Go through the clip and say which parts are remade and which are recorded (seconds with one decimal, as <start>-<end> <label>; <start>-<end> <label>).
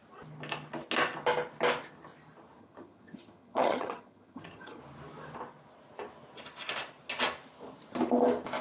0.0-2.6 recorded; 2.6-4.8 remade; 4.8-8.6 recorded